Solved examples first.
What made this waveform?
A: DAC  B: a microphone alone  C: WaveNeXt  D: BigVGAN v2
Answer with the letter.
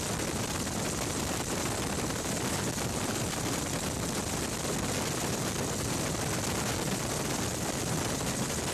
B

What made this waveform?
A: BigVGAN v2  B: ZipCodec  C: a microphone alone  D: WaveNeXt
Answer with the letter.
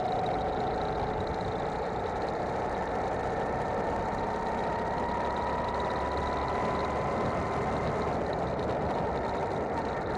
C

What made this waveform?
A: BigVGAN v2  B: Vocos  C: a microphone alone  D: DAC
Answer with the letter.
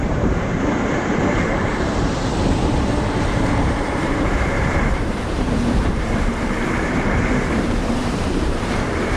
A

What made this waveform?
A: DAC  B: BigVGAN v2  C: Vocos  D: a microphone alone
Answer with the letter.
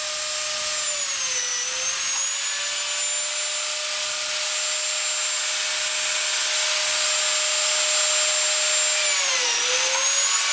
D